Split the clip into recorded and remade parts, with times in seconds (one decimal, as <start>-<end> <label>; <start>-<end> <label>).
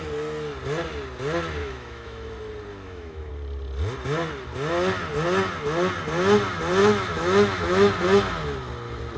0.0-1.6 recorded; 1.6-2.3 remade; 2.3-2.7 recorded; 2.7-3.3 remade; 3.3-6.8 recorded; 6.8-7.9 remade; 7.9-9.2 recorded